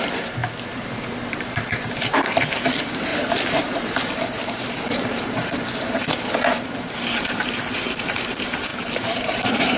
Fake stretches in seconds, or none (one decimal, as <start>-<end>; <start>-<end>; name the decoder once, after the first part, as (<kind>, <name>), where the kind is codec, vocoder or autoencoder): 0.0-0.4 (vocoder, BigVGAN v2); 1.3-9.8